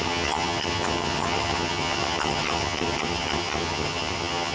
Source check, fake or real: fake